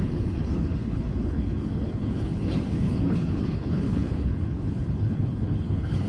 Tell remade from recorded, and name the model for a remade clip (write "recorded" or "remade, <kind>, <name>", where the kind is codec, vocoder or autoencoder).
remade, codec, HILCodec